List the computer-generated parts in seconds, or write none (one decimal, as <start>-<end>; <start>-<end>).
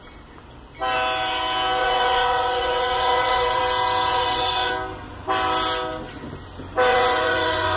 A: 1.8-3.6; 4.1-4.7; 6.9-7.8